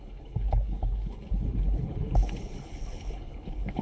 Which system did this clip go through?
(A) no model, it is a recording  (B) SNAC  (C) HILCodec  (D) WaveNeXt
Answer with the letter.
C